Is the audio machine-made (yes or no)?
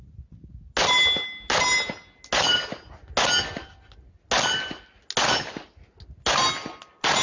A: no